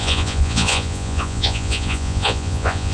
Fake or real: fake